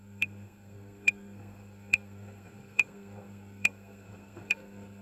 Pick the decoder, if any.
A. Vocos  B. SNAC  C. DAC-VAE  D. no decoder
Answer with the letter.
B